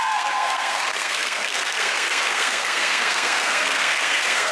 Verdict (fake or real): fake